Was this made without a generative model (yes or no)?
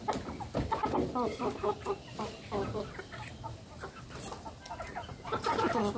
yes